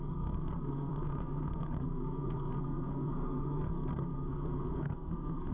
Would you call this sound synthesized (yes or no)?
yes